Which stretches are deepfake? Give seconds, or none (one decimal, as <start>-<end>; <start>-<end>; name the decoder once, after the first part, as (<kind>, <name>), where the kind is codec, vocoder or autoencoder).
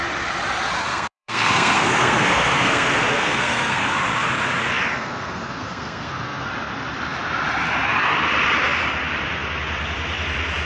0.9-4.0 (codec, SNAC); 4.9-6.5